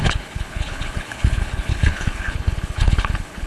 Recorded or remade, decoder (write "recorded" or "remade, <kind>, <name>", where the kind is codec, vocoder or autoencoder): remade, codec, HILCodec